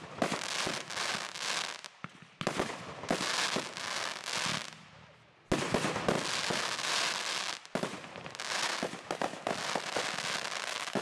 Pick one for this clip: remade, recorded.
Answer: recorded